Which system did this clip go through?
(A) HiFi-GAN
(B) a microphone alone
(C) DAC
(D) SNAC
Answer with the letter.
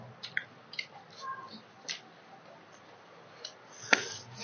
B